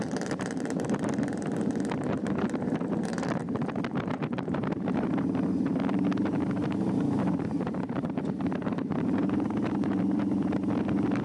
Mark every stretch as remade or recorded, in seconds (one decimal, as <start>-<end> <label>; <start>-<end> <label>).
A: 0.0-3.4 remade; 3.4-3.9 recorded; 3.9-11.2 remade